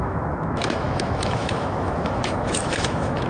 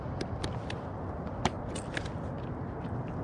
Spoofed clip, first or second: first